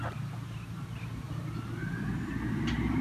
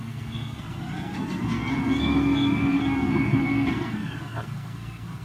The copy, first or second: second